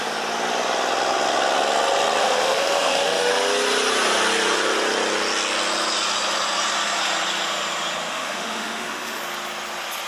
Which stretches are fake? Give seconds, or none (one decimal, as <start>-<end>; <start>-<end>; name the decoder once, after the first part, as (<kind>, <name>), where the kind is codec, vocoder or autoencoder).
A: 2.2-3.3 (autoencoder, DAC-VAE); 8.1-9.2